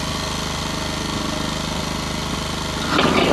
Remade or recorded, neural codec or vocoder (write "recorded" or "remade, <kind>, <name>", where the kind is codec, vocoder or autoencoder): recorded